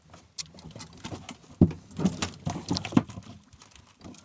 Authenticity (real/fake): real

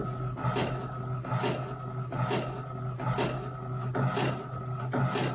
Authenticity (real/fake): real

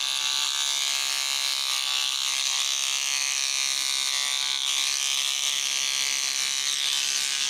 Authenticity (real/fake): real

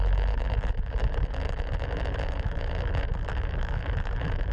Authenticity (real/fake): fake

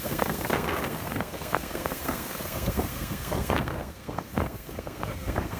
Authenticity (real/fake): fake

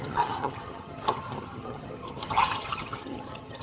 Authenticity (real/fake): fake